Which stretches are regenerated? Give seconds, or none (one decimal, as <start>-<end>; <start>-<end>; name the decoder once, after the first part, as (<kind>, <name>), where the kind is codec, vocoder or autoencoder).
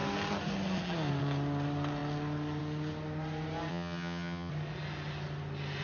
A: 3.7-4.5 (vocoder, HiFi-GAN)